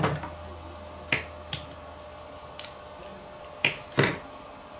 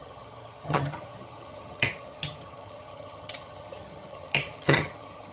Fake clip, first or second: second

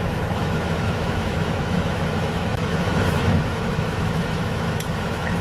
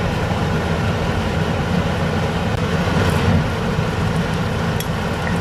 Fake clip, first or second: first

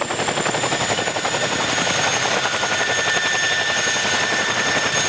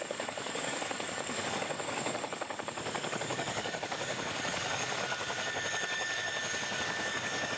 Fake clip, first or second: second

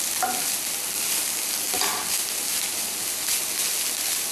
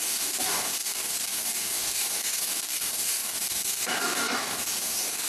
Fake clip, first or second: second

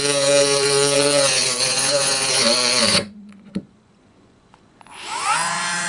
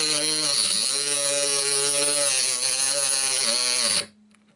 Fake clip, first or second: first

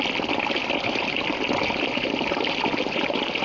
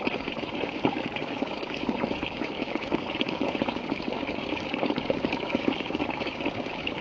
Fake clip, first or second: second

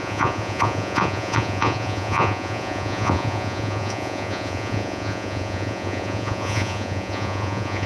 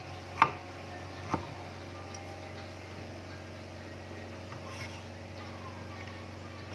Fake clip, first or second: first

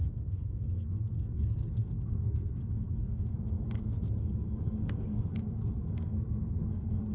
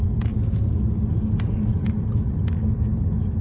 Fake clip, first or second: first